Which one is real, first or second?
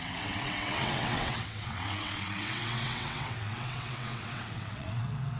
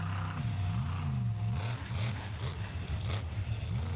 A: second